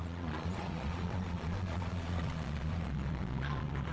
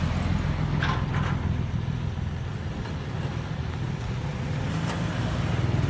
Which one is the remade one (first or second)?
first